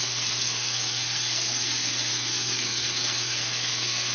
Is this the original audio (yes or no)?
no